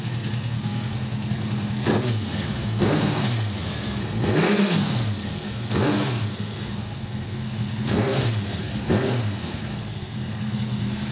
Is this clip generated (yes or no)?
yes